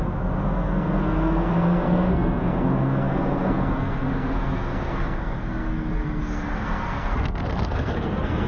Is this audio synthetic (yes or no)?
yes